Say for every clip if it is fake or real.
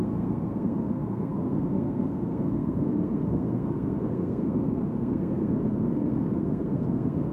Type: fake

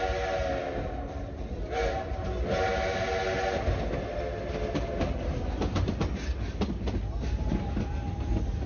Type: real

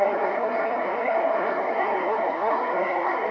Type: fake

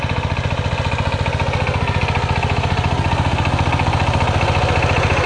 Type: real